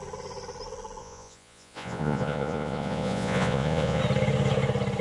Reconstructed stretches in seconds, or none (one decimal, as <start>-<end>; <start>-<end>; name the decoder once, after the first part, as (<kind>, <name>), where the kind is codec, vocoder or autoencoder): 1.0-4.0 (vocoder, Vocos)

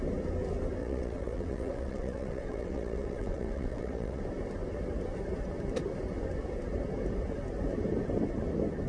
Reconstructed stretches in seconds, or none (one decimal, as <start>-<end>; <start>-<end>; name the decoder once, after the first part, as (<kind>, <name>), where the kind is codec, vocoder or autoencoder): 0.8-4.2 (vocoder, WaveNeXt)

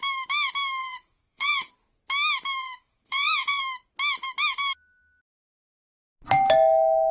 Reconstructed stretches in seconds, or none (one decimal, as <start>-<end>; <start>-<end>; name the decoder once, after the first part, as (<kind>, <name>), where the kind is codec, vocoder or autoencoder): 0.8-1.7 (vocoder, Vocos); 2.6-3.6

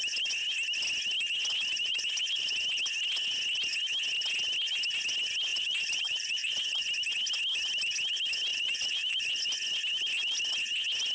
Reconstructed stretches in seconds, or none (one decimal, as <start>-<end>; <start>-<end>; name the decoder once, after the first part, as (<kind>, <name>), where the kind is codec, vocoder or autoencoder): 1.7-2.5 (vocoder, BigVGAN v2); 5.5-6.8; 8.5-9.3

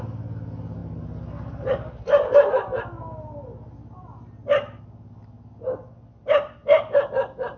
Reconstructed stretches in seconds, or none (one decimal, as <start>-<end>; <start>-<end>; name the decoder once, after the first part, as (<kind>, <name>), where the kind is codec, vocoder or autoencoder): none

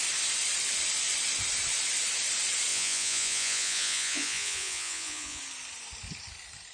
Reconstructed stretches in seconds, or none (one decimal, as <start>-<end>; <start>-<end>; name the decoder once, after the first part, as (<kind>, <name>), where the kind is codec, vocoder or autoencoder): 2.7-5.4 (vocoder, Vocos)